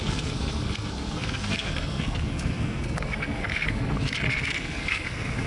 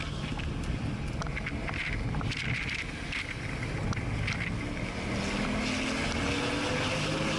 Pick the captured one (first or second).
second